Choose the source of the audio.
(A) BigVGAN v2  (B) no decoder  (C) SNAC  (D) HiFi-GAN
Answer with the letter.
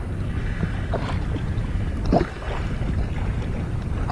B